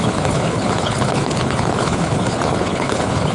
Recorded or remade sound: remade